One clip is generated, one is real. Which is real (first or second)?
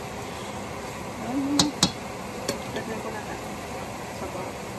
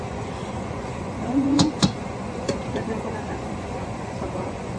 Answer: first